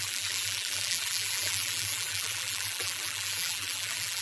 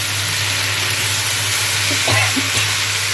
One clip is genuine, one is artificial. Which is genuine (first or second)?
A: second